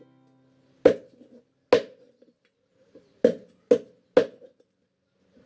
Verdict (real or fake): real